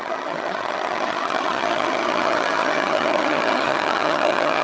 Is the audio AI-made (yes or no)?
yes